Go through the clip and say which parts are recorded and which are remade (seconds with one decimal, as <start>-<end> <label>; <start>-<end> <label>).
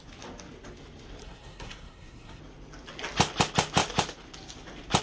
0.0-1.2 recorded; 1.2-2.4 remade; 2.4-5.0 recorded